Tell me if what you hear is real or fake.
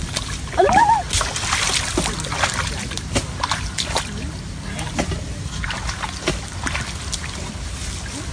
real